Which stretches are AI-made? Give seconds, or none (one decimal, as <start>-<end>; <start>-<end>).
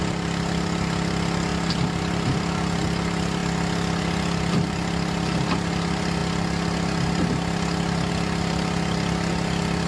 none